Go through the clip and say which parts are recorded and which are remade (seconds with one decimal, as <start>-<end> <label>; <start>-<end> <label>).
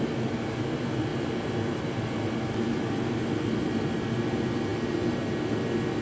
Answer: 0.0-1.1 recorded; 1.1-3.1 remade; 3.1-6.0 recorded